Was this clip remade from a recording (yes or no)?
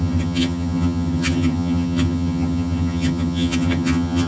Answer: yes